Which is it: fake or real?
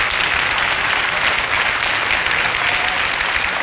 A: real